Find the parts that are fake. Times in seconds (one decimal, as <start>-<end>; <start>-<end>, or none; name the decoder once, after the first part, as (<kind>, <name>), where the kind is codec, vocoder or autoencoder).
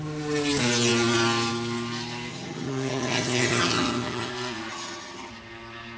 2.3-4.3 (vocoder, HiFi-GAN); 4.7-5.3